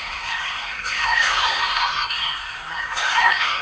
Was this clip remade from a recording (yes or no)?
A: yes